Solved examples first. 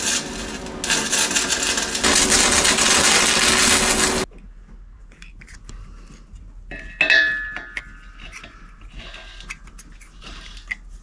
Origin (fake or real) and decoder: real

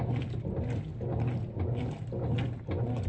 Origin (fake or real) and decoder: real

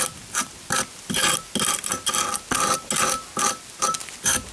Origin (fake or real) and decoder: real